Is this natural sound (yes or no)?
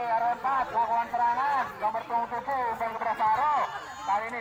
yes